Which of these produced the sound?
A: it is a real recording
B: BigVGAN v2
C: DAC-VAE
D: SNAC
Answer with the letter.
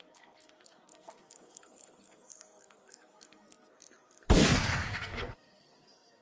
D